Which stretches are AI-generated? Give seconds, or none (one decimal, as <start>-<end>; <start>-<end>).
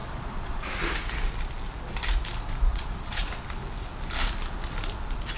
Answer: 0.0-0.6; 2.7-3.3